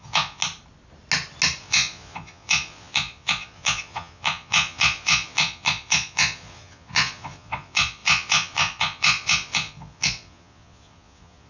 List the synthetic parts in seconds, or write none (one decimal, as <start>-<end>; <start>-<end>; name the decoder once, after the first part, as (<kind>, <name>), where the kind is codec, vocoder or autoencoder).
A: 0.0-0.4 (vocoder, Vocos); 1.6-11.5